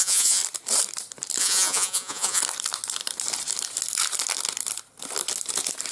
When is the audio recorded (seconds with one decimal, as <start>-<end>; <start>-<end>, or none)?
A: 0.4-1.4; 2.4-5.9